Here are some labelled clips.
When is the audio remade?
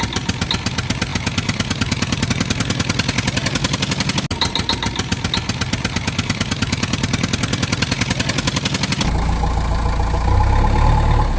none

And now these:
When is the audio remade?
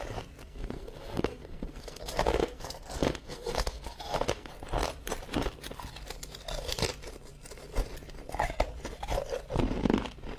0.4-4.5 (codec, SNAC)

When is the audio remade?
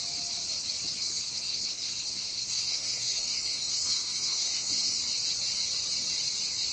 1.0-5.0 (codec, SNAC)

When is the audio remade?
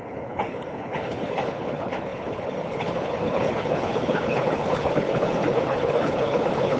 0.0-6.8 (codec, HILCodec)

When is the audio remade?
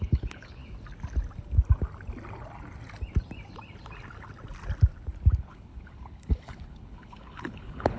0.0-0.6 (codec, HILCodec); 5.3-8.0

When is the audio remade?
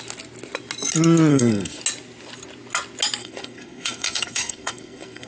1.3-1.8 (codec, SNAC); 3.2-5.3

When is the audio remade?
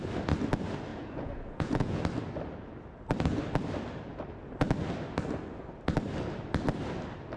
0.9-2.0 (vocoder, Vocos)